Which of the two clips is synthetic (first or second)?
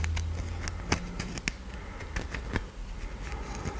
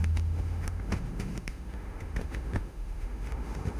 second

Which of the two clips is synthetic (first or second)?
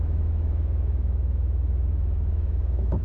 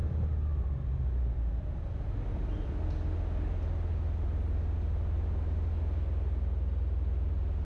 first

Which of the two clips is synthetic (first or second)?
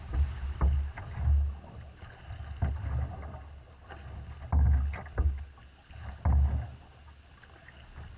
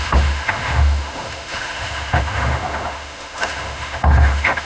second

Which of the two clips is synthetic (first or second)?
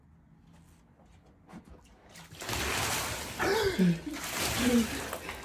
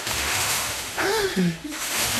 second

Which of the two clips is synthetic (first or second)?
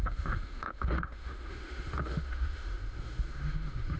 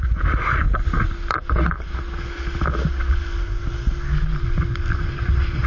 first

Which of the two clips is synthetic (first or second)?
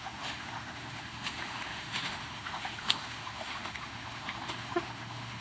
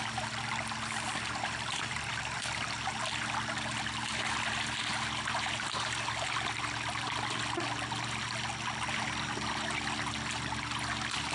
first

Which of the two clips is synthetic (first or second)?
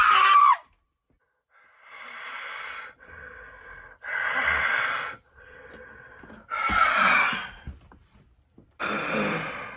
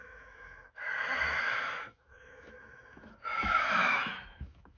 second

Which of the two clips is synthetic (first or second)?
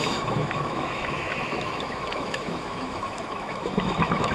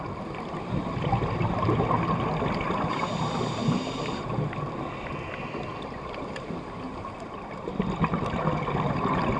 first